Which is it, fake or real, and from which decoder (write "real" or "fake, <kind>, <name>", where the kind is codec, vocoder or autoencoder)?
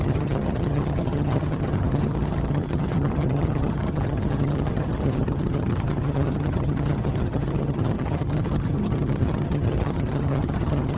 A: fake, vocoder, HiFi-GAN